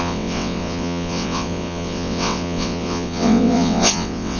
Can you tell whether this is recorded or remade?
remade